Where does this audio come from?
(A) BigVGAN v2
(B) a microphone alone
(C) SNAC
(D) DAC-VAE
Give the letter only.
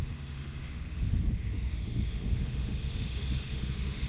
D